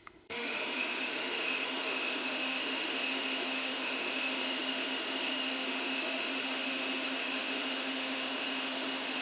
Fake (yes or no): yes